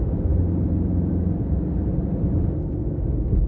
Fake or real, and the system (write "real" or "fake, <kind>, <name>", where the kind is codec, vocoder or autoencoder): real